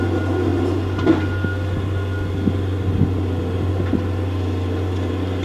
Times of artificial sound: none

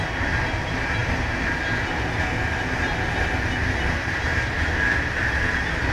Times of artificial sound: none

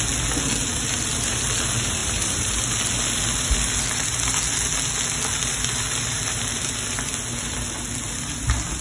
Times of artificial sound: 2.0-2.6 (vocoder, BigVGAN v2)

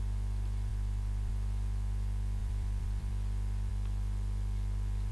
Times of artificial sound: 0.7-1.3 (vocoder, BigVGAN v2); 2.4-3.1

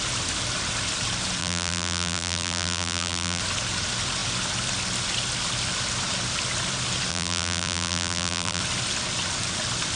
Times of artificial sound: 1.4-3.4 (vocoder, BigVGAN v2); 7.1-8.6

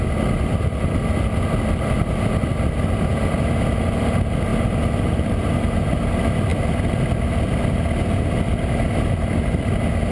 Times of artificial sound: none

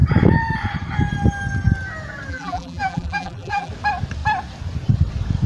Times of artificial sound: 2.3-3.7 (vocoder, BigVGAN v2)